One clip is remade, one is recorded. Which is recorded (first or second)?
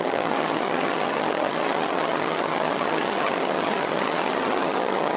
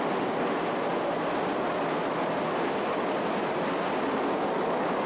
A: second